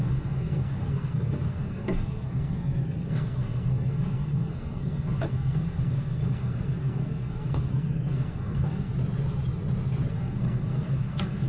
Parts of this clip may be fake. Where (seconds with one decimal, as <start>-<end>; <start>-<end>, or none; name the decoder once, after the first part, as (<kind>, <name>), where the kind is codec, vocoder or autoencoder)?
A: 0.0-8.9 (codec, SNAC); 10.1-11.5